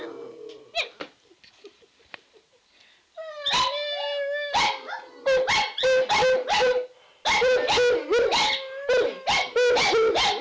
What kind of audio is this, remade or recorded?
recorded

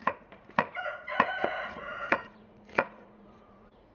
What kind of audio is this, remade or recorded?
remade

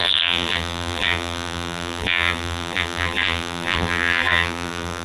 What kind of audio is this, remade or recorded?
remade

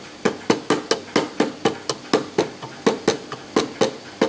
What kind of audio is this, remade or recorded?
recorded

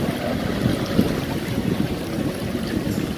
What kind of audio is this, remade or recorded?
recorded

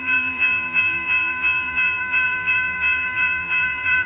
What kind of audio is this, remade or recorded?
remade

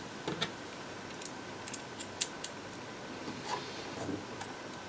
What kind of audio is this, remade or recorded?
recorded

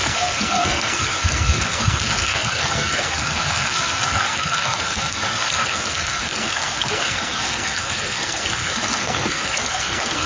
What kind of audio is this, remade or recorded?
remade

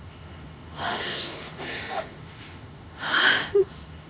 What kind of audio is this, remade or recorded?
remade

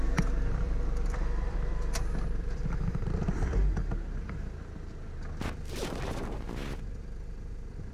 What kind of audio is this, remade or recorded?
remade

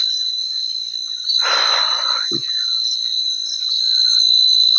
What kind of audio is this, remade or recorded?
recorded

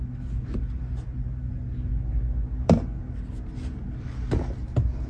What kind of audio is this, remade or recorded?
recorded